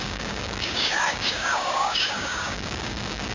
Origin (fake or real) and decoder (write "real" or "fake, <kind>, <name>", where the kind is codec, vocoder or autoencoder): fake, codec, DAC